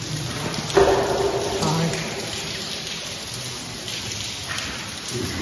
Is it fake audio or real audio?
real